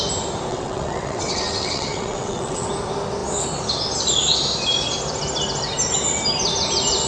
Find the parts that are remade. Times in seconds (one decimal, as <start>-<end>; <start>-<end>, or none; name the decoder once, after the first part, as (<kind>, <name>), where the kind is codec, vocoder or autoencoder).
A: 0.5-2.7 (vocoder, WaveNeXt)

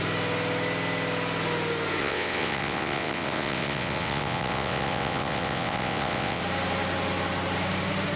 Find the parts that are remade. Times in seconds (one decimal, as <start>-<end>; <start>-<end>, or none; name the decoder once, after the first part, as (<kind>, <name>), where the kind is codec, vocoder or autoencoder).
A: 2.0-6.4 (vocoder, WaveNeXt)

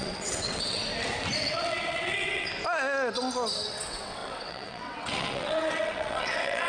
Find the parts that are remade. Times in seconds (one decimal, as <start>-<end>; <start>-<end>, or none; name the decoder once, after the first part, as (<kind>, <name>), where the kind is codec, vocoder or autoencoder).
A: 0.0-0.8 (vocoder, WaveNeXt); 1.4-2.5; 3.7-6.7

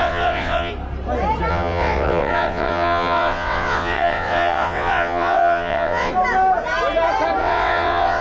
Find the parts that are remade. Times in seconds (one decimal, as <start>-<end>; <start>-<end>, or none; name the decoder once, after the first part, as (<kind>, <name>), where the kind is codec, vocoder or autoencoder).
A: 0.0-0.7 (vocoder, WaveNeXt); 1.5-6.1; 7.4-8.2

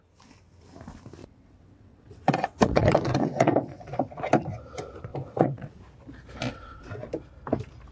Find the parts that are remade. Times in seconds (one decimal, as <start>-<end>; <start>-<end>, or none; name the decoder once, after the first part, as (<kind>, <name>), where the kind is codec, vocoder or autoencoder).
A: 1.2-4.1 (vocoder, WaveNeXt); 5.1-5.8; 6.5-7.1

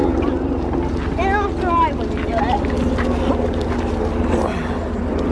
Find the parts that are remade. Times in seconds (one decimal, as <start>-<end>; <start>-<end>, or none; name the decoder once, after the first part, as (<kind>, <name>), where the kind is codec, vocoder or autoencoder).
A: none

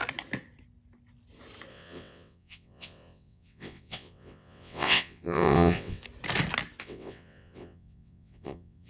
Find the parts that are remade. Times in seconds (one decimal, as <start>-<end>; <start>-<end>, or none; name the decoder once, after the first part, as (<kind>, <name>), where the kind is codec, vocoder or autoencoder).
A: 1.7-6.0 (vocoder, WaveNeXt); 6.8-8.9